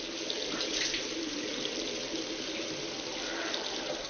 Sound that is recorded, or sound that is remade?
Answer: recorded